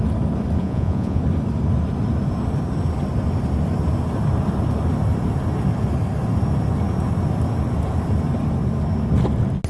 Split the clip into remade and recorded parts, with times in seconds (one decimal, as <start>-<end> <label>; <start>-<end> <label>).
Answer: 0.0-0.6 recorded; 0.6-1.2 remade; 1.2-9.7 recorded